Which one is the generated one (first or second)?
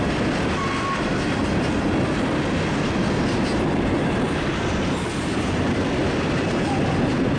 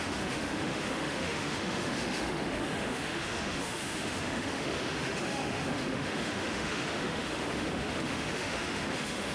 second